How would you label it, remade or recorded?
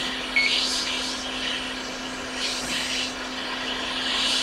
recorded